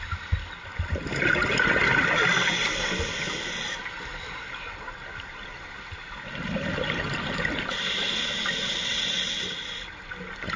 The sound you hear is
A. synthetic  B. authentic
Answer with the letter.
B